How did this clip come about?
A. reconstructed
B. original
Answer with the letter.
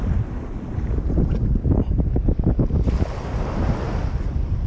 B